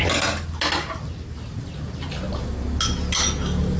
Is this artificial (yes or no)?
no